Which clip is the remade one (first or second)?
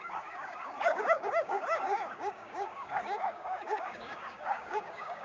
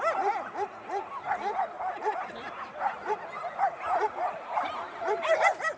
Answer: first